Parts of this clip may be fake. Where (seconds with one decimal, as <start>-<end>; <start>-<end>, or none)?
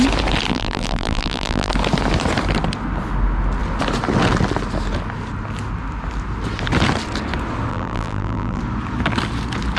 0.5-1.7; 7.7-8.6